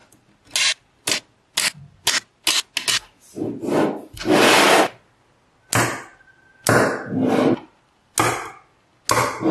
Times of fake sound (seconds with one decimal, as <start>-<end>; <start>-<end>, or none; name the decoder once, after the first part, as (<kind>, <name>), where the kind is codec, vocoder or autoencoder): none